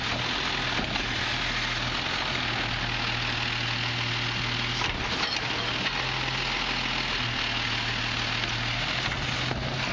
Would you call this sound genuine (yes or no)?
yes